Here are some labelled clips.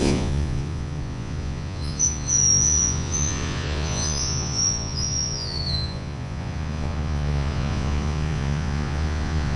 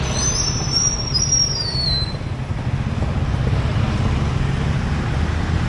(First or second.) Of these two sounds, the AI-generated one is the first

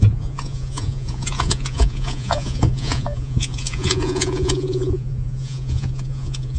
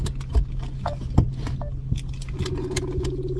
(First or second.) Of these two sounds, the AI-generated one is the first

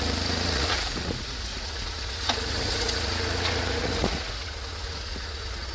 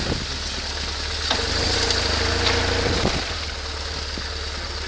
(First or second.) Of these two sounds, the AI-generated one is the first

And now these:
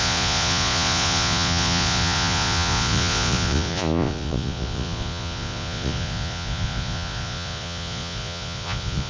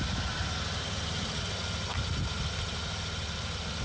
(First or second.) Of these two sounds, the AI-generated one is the first